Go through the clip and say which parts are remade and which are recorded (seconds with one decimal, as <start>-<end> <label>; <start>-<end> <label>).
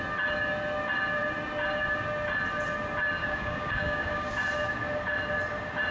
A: 0.0-3.2 recorded; 3.2-4.3 remade; 4.3-5.9 recorded